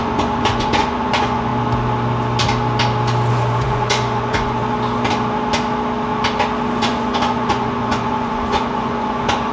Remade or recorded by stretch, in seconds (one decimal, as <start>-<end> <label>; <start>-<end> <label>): 0.0-1.5 remade; 1.5-3.3 recorded; 3.3-4.6 remade; 4.6-6.8 recorded; 6.8-9.5 remade